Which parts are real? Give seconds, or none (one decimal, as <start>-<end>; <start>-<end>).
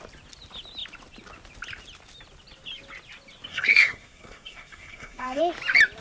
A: 0.0-3.5; 5.4-6.0